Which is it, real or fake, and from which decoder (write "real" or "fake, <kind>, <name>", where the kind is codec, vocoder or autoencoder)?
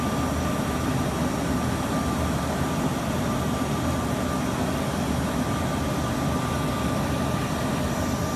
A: real